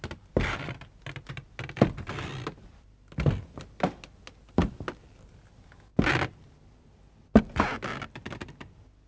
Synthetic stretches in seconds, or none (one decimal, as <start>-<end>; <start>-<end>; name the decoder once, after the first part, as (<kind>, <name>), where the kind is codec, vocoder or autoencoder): none